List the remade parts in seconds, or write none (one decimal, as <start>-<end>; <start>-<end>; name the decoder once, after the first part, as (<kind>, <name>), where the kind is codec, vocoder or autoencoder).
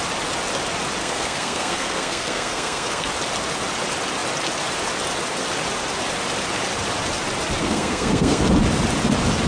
1.0-3.1 (codec, SNAC); 7.6-8.4